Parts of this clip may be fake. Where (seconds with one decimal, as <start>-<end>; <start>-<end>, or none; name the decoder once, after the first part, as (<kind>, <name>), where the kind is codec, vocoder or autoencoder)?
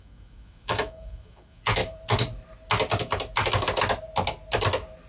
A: 0.0-1.8 (autoencoder, DAC-VAE)